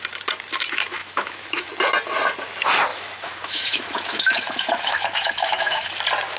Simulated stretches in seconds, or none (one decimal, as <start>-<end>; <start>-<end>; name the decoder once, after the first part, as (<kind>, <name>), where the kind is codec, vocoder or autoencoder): 1.0-1.7 (autoencoder, DAC-VAE); 2.9-5.9